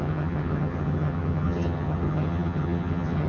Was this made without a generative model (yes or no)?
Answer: no